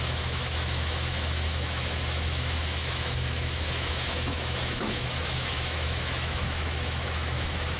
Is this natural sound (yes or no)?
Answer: no